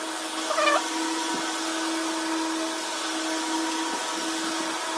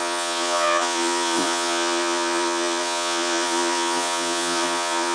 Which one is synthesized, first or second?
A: second